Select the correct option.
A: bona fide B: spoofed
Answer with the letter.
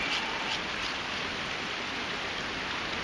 A